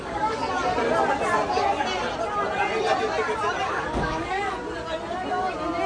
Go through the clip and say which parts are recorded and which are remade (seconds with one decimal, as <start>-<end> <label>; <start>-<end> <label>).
0.0-0.4 remade; 0.4-3.7 recorded; 3.7-4.6 remade; 4.6-5.9 recorded